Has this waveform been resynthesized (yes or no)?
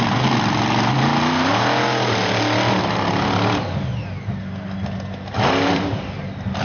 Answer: no